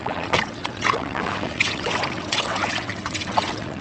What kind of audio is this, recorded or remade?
remade